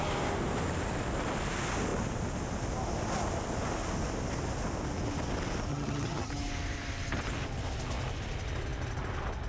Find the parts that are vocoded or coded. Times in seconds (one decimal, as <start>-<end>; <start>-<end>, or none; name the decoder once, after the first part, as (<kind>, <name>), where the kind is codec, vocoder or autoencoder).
5.7-6.3 (vocoder, HiFi-GAN)

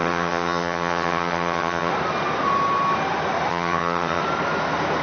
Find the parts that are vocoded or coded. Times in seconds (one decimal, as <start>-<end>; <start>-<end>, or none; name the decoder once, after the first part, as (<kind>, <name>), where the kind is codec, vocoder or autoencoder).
0.0-1.9 (vocoder, HiFi-GAN); 3.5-4.2

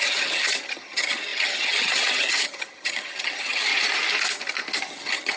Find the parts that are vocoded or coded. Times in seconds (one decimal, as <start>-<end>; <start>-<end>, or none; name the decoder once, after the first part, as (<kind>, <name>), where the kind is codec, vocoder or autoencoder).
0.0-3.7 (vocoder, HiFi-GAN); 4.8-5.4